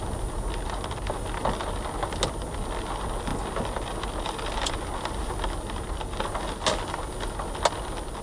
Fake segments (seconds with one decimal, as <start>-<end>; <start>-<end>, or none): none